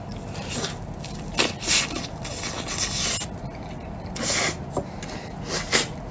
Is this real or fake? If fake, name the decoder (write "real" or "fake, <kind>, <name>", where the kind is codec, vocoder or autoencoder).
real